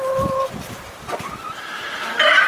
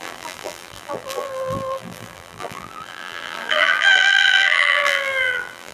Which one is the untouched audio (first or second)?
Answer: first